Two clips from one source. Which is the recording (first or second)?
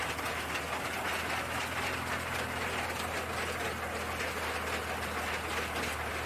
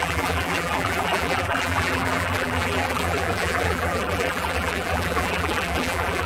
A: first